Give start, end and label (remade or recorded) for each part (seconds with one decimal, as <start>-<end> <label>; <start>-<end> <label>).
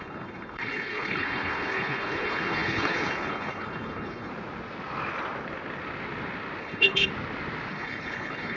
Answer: 0.0-4.3 remade; 4.3-6.6 recorded; 6.6-7.1 remade; 7.1-7.7 recorded; 7.7-8.6 remade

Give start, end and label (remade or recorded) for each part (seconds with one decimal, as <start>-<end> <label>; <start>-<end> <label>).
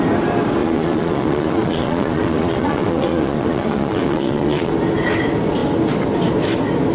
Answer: 0.0-0.6 recorded; 0.6-4.7 remade; 4.7-6.9 recorded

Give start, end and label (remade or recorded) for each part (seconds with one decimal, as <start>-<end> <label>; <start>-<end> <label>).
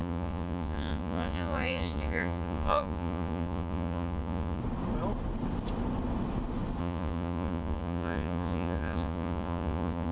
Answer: 0.0-4.6 remade; 4.6-6.8 recorded; 6.8-10.1 remade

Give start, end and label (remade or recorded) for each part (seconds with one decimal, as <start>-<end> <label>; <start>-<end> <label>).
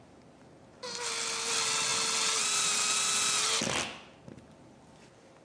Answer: 0.0-5.4 recorded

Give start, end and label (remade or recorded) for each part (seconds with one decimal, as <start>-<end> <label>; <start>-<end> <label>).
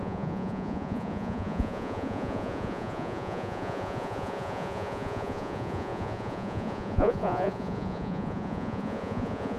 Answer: 0.0-9.6 remade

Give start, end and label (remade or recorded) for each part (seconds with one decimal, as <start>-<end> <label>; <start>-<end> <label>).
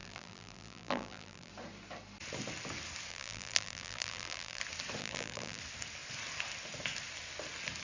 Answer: 0.0-1.5 remade; 1.5-3.1 recorded; 3.1-4.6 remade; 4.6-5.0 recorded; 5.0-5.6 remade; 5.6-7.8 recorded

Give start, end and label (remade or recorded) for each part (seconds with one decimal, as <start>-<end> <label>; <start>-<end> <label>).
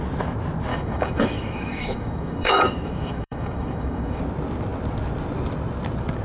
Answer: 0.0-0.7 recorded; 0.7-4.2 remade; 4.2-6.2 recorded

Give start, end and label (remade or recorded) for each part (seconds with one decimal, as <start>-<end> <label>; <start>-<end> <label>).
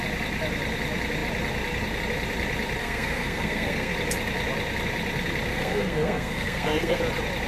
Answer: 0.0-2.8 recorded; 2.8-3.9 remade; 3.9-5.5 recorded; 5.5-7.0 remade; 7.0-7.5 recorded